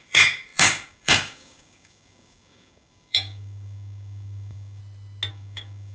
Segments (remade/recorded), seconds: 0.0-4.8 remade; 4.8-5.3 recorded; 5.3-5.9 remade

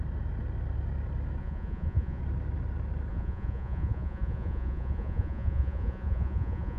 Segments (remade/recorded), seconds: 0.0-1.4 recorded; 1.4-2.2 remade; 2.2-3.1 recorded; 3.1-6.8 remade

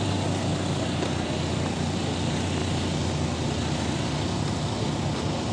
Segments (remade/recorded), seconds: 0.0-5.5 recorded

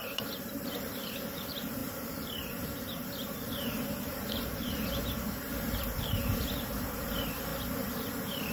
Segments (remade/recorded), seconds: 0.0-7.5 remade; 7.5-8.1 recorded; 8.1-8.5 remade